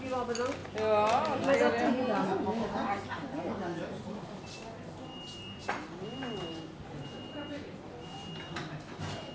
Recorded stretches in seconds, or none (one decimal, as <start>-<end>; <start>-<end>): 0.0-9.3